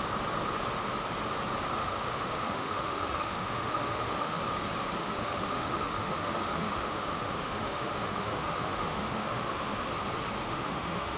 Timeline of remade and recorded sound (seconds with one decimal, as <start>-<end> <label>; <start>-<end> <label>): 0.0-1.8 recorded; 1.8-4.4 remade; 4.4-5.0 recorded; 5.0-9.9 remade; 9.9-10.4 recorded; 10.4-11.2 remade